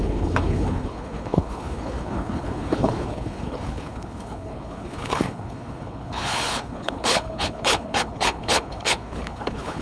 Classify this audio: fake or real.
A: fake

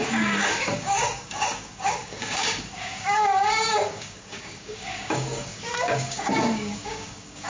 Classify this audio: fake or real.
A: fake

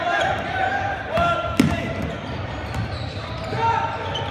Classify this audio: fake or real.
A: fake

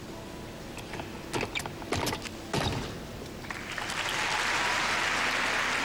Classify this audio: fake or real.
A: real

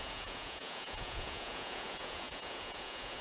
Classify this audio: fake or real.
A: fake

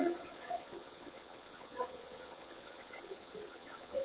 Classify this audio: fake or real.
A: fake